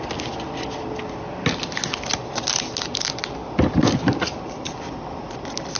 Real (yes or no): yes